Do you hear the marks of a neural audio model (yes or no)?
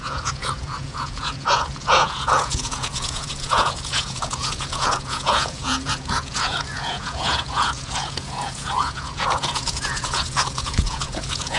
yes